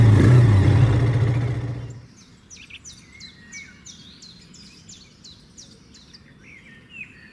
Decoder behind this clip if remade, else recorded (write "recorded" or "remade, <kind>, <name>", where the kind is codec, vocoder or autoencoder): recorded